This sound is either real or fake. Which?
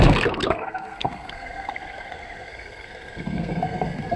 fake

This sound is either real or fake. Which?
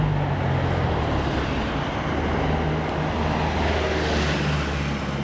real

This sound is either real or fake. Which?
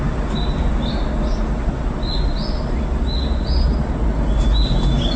real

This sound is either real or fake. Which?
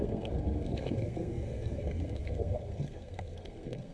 fake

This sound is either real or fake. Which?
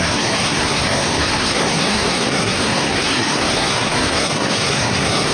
fake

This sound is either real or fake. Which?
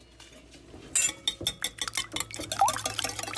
real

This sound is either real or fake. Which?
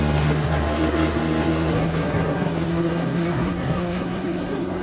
fake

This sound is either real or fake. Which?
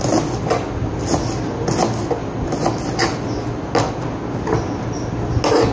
real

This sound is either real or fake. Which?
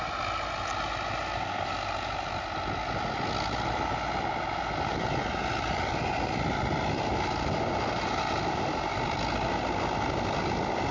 real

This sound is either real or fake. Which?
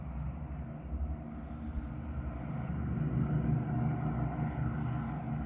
real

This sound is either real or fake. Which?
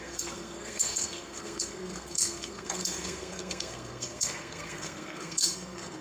fake